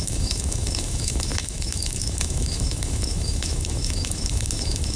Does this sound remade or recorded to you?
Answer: remade